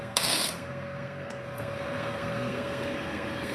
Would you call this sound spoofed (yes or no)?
yes